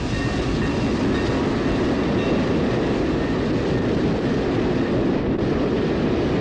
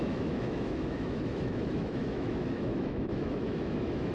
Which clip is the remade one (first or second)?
second